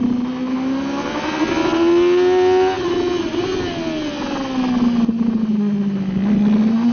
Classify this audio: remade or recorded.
recorded